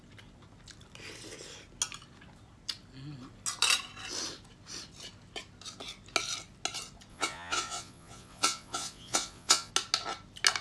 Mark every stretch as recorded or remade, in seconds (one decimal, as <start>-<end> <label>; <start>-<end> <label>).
0.0-7.1 recorded; 7.1-9.7 remade; 9.7-10.6 recorded